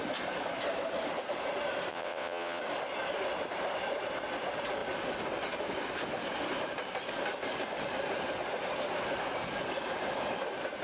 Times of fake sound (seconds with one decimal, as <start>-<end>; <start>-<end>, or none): 1.9-2.6